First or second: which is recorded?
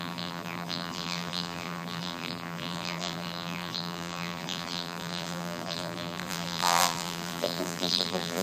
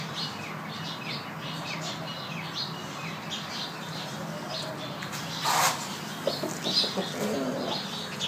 second